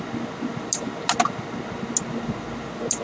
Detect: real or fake real